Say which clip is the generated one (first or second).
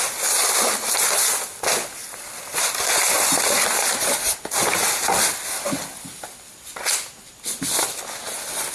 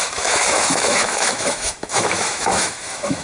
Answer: second